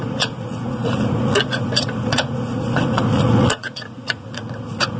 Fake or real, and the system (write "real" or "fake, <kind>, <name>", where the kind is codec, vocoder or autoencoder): fake, vocoder, Vocos